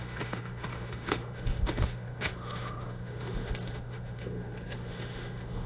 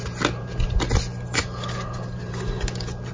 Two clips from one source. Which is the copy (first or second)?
first